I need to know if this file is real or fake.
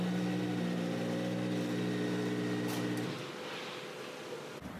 real